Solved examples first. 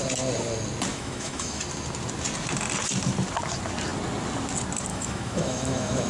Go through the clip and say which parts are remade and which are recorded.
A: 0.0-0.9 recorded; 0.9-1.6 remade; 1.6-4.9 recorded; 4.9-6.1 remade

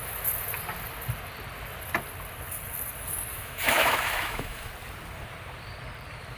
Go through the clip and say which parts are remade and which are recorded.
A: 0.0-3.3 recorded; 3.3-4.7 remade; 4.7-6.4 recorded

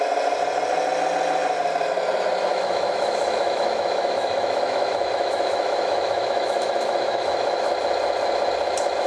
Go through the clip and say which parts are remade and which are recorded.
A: 0.0-2.5 recorded; 2.5-7.7 remade; 7.7-9.1 recorded

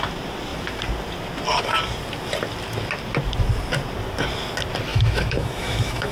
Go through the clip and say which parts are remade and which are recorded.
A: 0.0-4.9 recorded; 4.9-6.1 remade